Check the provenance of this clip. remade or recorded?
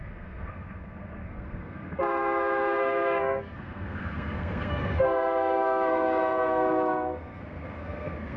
remade